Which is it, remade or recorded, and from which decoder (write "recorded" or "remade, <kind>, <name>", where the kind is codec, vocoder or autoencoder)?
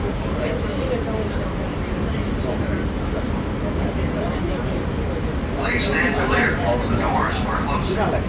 recorded